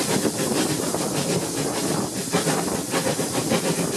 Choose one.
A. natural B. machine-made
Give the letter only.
A